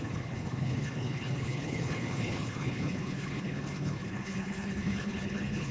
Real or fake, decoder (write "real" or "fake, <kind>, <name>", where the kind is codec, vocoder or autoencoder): fake, codec, HILCodec